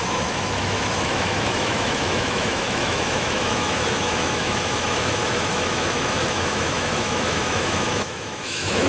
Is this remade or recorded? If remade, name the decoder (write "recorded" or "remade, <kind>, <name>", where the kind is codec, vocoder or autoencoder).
remade, autoencoder, DAC-VAE